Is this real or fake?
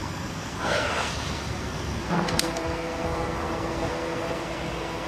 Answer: fake